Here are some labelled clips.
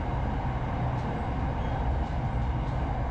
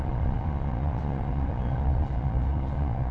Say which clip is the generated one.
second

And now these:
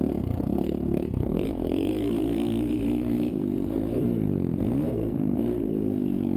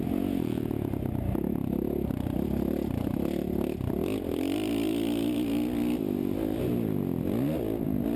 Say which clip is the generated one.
first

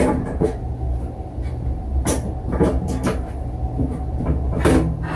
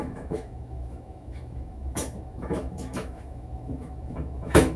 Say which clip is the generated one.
second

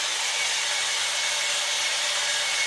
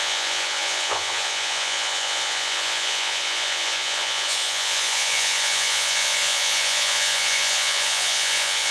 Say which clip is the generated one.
second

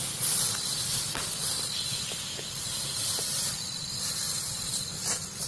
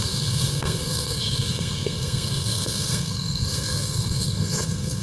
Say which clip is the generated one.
second